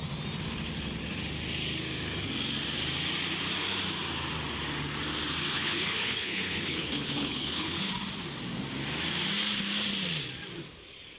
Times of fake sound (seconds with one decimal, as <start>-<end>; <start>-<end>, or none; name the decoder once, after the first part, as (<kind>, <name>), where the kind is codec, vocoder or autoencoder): 5.5-7.9 (codec, HILCodec)